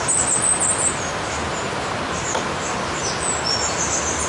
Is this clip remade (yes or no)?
no